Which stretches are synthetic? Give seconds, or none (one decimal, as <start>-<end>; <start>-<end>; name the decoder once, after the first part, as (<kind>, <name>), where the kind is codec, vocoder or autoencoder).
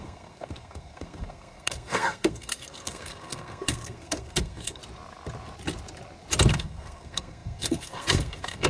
0.0-4.8 (codec, SNAC); 6.5-8.7